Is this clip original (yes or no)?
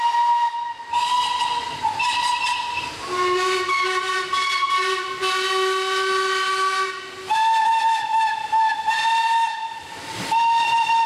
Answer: yes